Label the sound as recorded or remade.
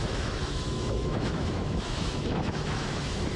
remade